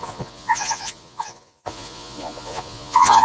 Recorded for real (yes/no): no